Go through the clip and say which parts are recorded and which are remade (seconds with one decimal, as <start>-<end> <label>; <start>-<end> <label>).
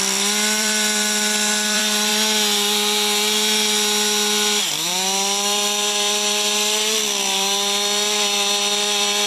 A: 0.0-2.1 remade; 2.1-4.6 recorded; 4.6-9.3 remade